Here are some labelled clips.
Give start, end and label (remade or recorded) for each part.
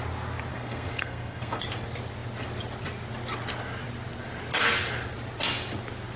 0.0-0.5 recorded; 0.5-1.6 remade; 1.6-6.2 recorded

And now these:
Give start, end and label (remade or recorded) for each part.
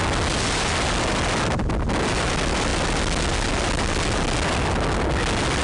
0.0-5.6 recorded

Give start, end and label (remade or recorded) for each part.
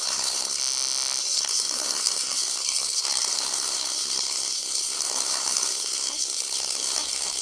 0.0-0.6 remade; 0.6-1.2 recorded; 1.2-7.4 remade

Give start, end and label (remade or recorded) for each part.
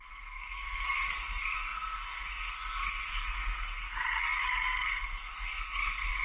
0.0-6.2 remade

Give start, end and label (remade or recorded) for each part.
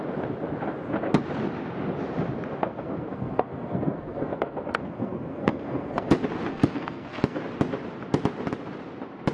0.0-2.6 recorded; 2.6-6.1 remade; 6.1-6.5 recorded; 6.5-7.4 remade; 7.4-9.3 recorded